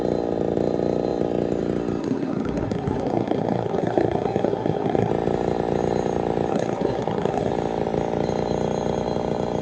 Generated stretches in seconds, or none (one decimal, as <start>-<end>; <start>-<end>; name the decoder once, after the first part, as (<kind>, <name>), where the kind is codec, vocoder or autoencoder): 2.0-5.1 (codec, SNAC); 6.5-7.5